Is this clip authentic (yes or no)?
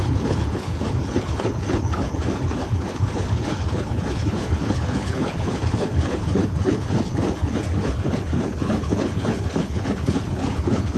no